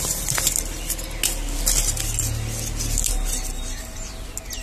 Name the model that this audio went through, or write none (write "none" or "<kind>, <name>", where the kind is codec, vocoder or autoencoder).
none